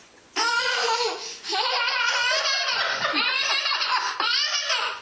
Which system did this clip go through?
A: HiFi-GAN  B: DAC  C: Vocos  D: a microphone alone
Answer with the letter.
C